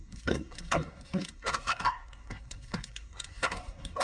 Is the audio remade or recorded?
remade